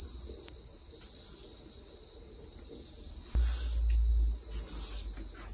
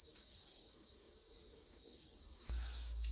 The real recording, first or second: first